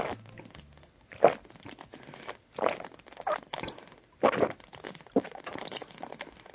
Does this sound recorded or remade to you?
recorded